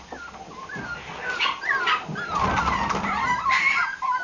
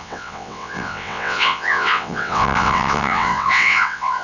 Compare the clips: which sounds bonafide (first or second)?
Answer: first